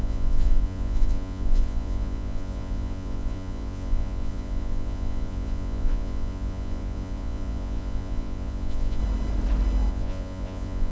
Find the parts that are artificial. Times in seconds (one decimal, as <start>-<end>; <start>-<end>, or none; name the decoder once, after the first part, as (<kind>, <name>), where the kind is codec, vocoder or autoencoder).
0.0-9.0 (vocoder, Vocos); 9.9-10.9